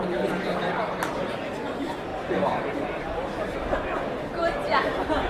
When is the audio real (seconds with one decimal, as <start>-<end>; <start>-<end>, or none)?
4.4-5.3